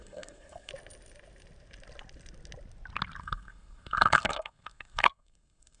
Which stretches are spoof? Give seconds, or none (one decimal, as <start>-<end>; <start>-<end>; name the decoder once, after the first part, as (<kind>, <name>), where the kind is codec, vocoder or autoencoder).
0.0-0.7 (codec, SNAC); 3.2-5.8